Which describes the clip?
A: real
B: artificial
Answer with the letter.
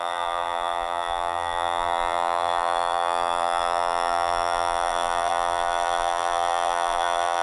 B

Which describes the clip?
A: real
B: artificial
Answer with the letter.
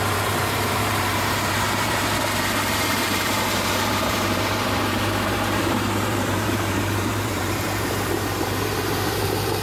B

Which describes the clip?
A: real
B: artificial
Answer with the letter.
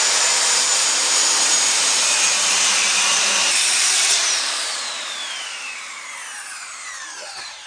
B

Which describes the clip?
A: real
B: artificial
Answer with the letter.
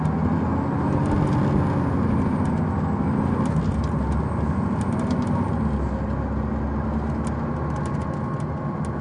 A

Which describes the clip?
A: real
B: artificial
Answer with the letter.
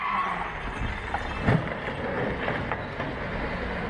A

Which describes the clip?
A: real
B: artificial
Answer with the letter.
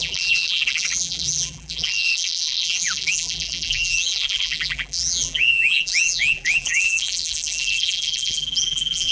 B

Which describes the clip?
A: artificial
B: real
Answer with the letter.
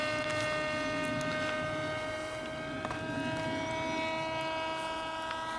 B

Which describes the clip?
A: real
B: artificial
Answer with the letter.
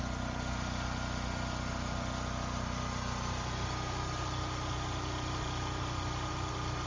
A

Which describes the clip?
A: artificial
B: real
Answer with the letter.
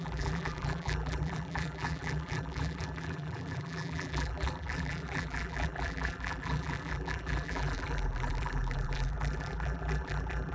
A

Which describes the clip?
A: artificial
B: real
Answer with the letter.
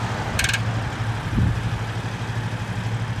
B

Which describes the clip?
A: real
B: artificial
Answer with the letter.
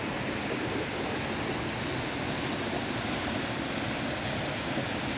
A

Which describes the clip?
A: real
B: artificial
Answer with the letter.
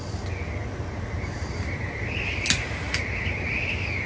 A